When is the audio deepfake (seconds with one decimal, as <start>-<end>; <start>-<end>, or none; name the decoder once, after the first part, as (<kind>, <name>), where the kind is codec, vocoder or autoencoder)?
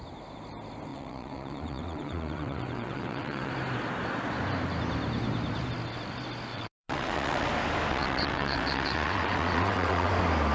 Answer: 0.9-3.5 (vocoder, WaveNeXt); 6.5-7.5; 7.9-10.1